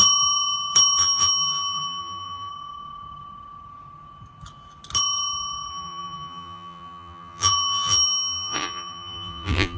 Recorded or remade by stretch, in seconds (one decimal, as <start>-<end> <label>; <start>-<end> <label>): 0.0-1.0 recorded; 1.0-2.5 remade; 2.5-5.7 recorded; 5.7-9.8 remade